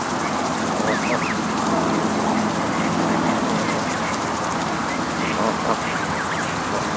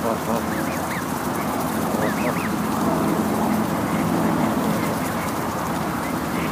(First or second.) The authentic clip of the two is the first